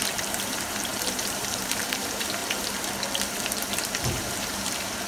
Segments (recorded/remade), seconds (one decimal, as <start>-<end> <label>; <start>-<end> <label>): 0.0-2.4 remade; 2.4-3.4 recorded; 3.4-5.1 remade